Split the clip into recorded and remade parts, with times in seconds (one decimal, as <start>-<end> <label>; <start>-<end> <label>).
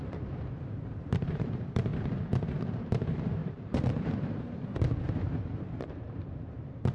0.0-1.9 remade; 1.9-2.8 recorded; 2.8-6.9 remade